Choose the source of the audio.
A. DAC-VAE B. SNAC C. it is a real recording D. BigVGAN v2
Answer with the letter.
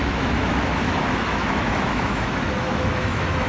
A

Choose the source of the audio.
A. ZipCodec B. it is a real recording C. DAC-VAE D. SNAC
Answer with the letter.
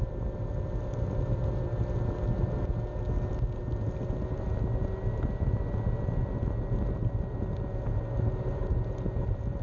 B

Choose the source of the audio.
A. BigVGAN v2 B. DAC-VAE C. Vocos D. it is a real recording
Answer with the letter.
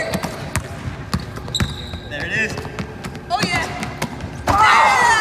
D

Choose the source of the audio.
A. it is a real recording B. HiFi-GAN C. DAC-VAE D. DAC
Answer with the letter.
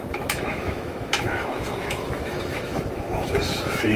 C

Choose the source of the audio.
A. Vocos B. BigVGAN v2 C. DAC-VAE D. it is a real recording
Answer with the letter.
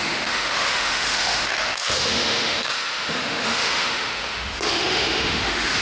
C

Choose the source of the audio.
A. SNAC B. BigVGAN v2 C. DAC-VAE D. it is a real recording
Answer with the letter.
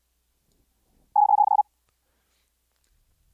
D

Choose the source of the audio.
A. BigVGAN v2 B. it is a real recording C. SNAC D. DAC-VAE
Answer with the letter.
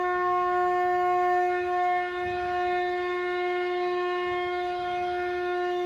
D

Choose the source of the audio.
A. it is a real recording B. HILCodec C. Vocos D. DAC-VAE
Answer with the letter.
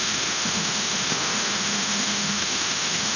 D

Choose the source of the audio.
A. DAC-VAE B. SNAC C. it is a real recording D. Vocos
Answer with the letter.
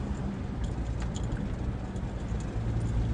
C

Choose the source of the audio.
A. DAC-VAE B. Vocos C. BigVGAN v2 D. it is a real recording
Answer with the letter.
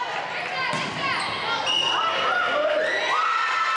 D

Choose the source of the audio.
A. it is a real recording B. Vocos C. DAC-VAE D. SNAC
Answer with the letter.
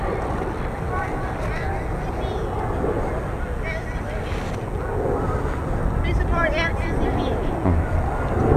A